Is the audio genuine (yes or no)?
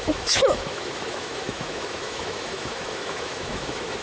no